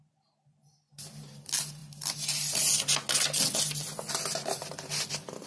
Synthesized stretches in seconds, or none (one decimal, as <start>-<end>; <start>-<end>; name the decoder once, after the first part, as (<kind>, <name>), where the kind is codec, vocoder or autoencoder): none